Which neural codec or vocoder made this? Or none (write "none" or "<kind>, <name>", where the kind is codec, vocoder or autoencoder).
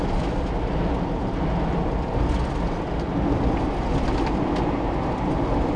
none